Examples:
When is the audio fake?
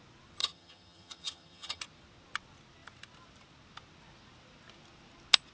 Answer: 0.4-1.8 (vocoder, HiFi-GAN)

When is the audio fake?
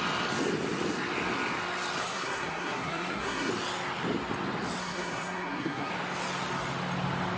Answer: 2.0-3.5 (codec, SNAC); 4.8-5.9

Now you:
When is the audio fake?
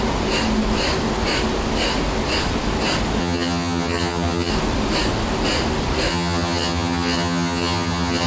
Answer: 3.2-4.5 (vocoder, HiFi-GAN); 6.1-8.3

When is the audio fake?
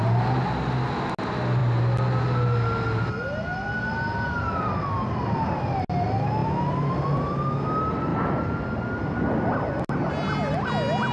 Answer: none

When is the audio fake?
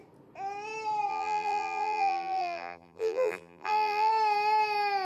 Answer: 1.1-4.1 (vocoder, BigVGAN v2)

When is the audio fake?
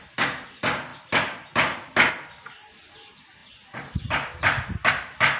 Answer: none